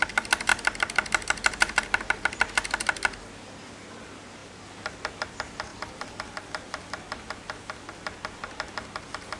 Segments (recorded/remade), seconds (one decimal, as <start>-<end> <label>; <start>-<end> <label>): 0.0-5.7 recorded; 5.7-6.3 remade; 6.3-9.4 recorded